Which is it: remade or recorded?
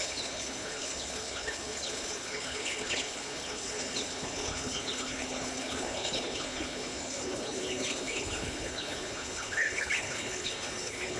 remade